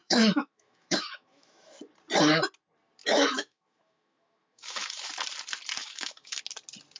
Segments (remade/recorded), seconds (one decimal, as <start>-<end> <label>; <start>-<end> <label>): 0.0-1.8 remade; 1.8-3.0 recorded; 3.0-5.1 remade; 5.1-5.8 recorded; 5.8-6.4 remade; 6.4-7.0 recorded